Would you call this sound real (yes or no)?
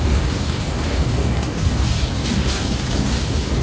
no